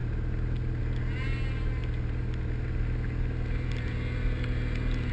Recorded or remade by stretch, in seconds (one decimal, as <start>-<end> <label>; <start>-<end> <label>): 0.0-5.1 recorded